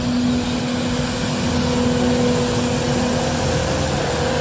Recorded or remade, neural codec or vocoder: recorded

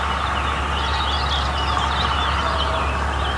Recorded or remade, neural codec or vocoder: recorded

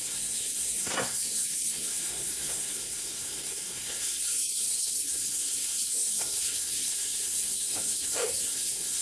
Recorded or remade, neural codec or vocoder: remade, codec, SNAC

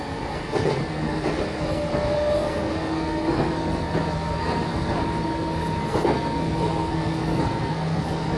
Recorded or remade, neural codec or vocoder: remade, codec, SNAC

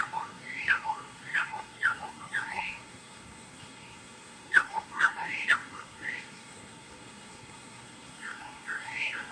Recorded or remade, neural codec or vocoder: remade, codec, SNAC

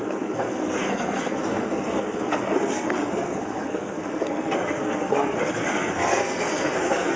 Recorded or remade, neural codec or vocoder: remade, codec, SNAC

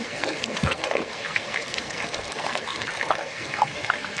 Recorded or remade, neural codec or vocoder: remade, codec, SNAC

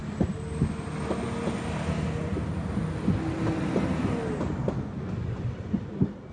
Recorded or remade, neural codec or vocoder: recorded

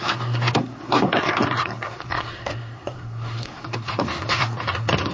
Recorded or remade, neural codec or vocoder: remade, codec, SNAC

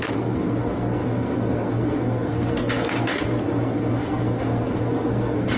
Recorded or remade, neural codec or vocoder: remade, codec, SNAC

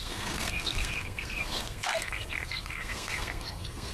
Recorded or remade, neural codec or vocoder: remade, codec, SNAC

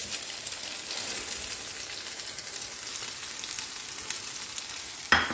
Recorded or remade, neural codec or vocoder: recorded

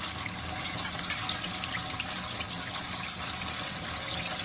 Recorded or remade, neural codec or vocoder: recorded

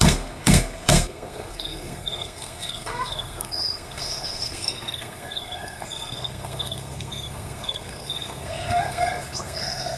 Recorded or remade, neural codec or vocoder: remade, codec, SNAC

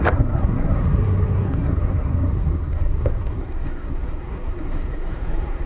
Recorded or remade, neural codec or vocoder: remade, codec, SNAC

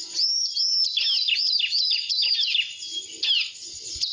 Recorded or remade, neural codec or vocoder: recorded